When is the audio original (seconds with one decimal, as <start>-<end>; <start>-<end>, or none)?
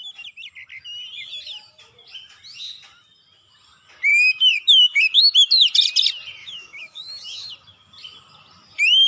0.0-4.1; 5.2-6.4; 7.5-9.1